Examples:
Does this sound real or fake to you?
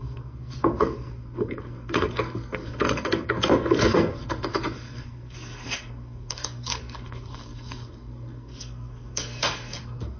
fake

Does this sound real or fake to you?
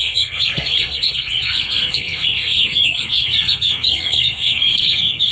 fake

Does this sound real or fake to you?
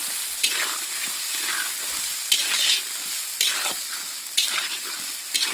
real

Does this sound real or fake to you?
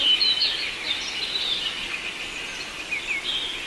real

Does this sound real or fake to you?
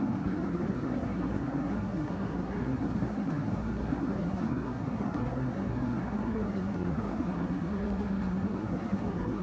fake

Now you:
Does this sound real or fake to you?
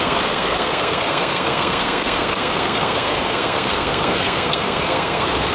fake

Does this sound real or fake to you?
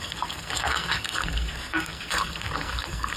fake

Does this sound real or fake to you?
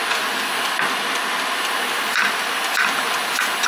real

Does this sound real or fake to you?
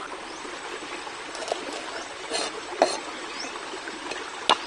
real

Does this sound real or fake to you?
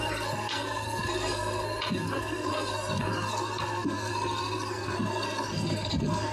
fake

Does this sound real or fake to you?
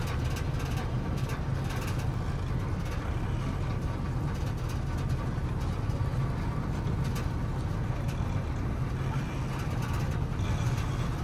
real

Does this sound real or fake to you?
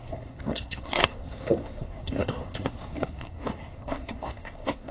fake